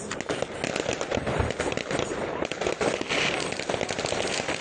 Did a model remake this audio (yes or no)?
no